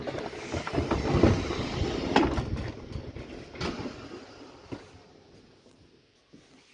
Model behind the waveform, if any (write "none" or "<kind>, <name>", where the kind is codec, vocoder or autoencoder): none